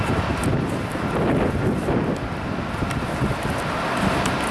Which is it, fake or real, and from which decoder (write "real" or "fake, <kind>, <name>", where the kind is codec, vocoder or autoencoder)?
real